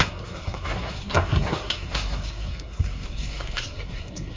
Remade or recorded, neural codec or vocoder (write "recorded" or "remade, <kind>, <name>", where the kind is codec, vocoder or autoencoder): remade, codec, SNAC